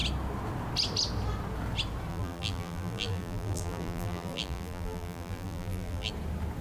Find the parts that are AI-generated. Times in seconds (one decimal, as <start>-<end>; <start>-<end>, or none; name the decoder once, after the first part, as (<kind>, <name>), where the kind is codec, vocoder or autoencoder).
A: 2.1-6.1 (vocoder, BigVGAN v2)